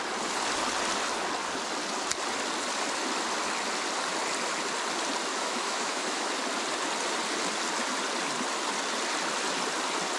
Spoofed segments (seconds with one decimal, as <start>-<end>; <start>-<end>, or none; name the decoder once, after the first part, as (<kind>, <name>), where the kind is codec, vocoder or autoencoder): 5.3-6.3 (autoencoder, DAC-VAE)